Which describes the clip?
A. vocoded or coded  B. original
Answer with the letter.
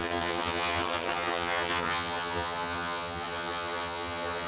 A